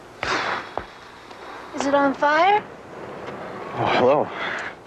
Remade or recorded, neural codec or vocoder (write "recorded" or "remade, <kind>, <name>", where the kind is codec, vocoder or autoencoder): recorded